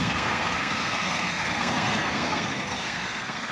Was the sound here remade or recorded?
remade